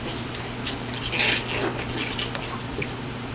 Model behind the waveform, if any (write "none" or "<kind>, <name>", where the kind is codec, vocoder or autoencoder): none